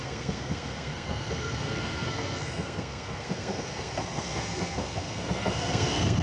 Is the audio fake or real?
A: fake